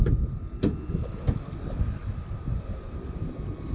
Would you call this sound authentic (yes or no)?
yes